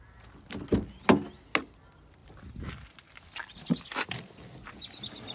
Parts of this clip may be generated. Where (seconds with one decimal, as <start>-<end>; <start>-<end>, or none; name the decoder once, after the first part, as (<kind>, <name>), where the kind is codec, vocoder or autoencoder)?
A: none